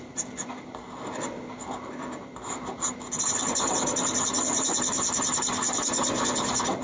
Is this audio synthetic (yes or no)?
no